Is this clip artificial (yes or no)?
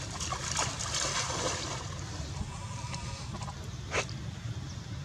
no